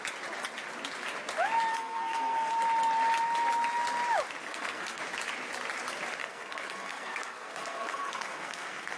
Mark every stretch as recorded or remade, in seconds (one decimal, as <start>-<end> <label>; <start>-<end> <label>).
0.0-1.7 recorded; 1.7-2.5 remade; 2.5-4.4 recorded; 4.4-5.0 remade; 5.0-6.2 recorded; 6.2-9.0 remade